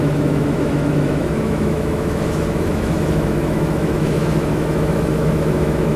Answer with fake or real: fake